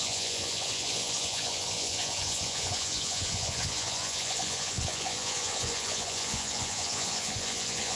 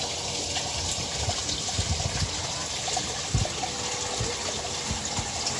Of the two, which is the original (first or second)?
second